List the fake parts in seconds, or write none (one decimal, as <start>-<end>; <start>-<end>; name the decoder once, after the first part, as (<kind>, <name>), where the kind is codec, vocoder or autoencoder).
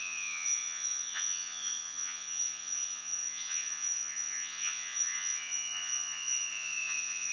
0.0-7.3 (vocoder, Vocos)